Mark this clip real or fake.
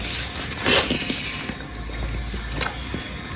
real